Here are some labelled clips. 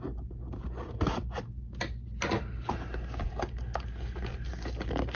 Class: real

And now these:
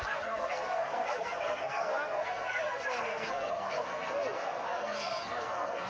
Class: fake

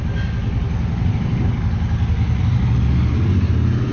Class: real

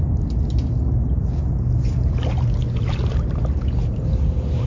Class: real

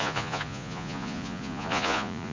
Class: fake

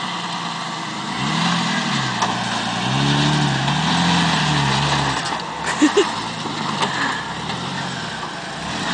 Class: real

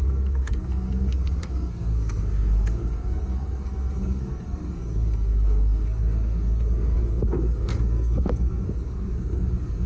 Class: fake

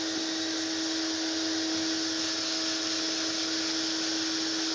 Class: real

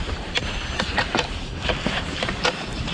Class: fake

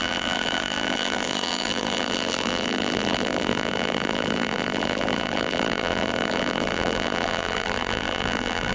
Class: fake